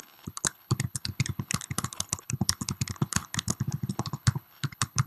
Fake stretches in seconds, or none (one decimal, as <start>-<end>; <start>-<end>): 0.0-5.1